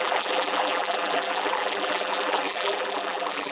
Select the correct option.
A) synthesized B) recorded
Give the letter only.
A